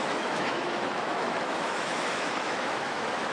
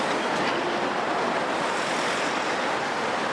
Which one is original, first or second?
second